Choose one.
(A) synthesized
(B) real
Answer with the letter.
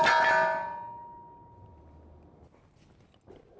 B